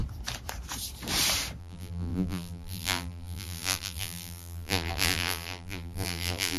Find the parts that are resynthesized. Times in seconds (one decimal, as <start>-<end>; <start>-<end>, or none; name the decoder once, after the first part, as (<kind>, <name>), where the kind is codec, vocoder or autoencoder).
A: 1.6-6.6 (vocoder, BigVGAN v2)